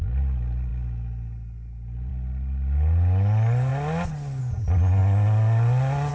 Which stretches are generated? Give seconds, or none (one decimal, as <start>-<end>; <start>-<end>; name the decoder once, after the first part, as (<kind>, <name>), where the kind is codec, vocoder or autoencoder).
none